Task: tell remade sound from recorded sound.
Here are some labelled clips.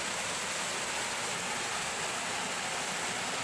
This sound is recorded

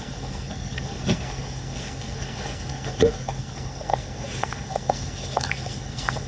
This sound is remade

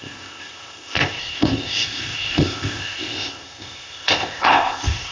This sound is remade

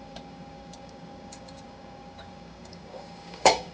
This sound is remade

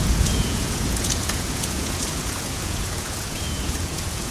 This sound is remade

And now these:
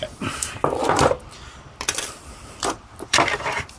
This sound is remade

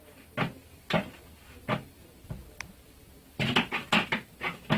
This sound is recorded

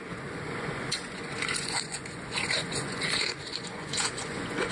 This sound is remade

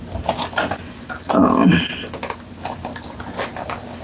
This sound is recorded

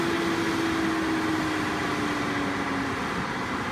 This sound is recorded